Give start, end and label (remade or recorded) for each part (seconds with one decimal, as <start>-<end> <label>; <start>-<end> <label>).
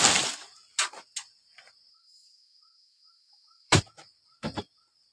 0.0-1.9 recorded; 1.9-3.8 remade; 3.8-5.1 recorded